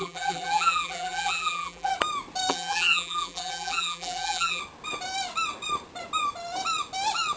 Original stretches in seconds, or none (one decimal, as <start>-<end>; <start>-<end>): 1.9-2.5; 4.6-7.4